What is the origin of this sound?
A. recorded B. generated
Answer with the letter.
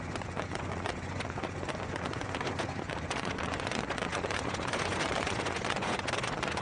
B